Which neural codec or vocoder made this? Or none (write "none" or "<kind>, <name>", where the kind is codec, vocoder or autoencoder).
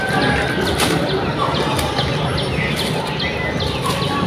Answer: none